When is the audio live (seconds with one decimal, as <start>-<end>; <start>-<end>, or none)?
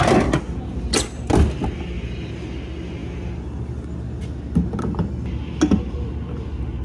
0.0-6.8